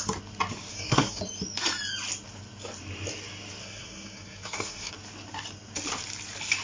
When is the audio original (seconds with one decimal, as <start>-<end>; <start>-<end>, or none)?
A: 0.0-0.7; 1.2-3.6; 4.9-6.6